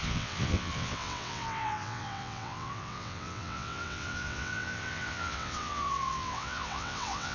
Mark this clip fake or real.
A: fake